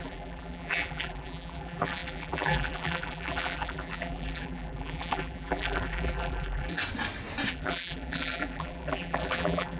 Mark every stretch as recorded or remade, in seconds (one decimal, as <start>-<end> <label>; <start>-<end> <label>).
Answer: 0.0-6.8 remade; 6.8-7.5 recorded; 7.5-9.8 remade